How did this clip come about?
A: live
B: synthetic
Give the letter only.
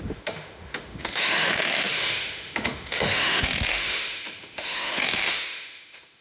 B